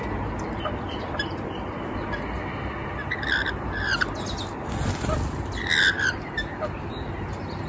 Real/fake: real